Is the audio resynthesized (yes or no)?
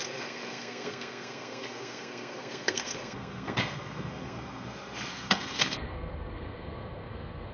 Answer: yes